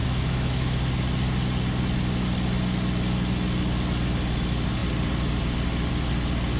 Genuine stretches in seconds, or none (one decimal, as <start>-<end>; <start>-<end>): 0.8-6.6